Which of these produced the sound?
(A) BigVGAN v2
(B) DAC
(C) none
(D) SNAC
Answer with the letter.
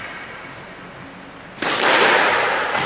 C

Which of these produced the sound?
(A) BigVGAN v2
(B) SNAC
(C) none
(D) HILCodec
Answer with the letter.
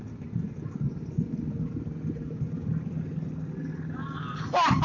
C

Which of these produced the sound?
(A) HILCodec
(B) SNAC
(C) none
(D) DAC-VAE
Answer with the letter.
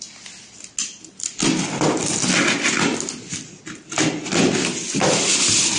C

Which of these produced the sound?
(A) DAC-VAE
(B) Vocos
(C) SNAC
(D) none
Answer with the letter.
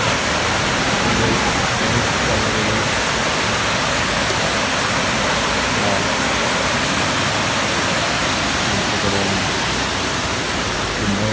D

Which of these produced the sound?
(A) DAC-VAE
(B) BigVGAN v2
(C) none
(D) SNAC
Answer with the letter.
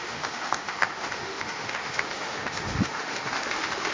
A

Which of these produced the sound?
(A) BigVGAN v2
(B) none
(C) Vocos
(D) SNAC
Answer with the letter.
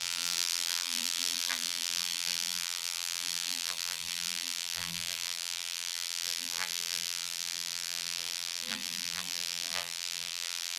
A